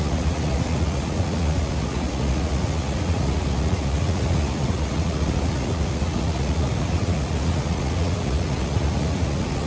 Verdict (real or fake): fake